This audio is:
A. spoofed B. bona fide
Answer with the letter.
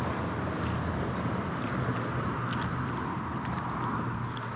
B